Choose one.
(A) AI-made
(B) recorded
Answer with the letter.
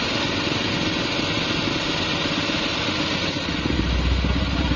B